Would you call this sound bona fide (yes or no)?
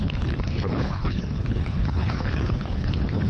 no